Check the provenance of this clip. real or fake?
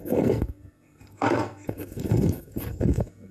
fake